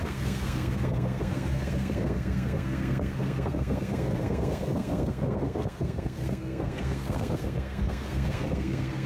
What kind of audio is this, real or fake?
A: fake